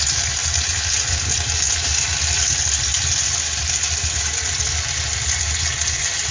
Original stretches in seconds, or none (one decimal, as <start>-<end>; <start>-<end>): 0.0-6.3